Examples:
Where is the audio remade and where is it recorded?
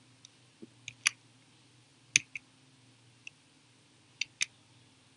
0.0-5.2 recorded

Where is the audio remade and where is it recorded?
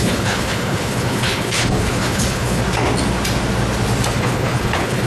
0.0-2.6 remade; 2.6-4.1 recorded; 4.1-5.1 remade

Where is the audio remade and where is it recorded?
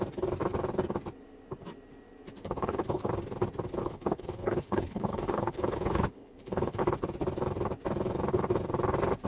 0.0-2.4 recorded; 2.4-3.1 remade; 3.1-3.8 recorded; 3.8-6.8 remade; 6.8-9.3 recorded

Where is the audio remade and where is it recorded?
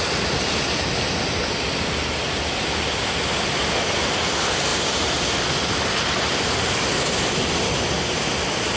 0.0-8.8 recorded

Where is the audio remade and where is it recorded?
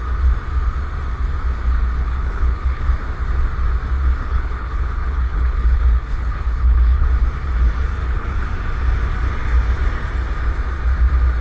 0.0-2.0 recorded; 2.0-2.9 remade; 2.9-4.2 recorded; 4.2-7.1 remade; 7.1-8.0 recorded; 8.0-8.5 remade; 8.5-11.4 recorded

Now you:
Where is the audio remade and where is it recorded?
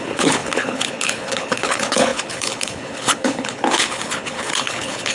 0.0-5.1 remade